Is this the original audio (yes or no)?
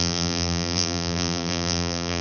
no